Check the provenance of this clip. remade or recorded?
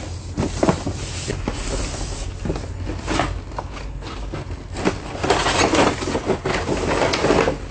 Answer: recorded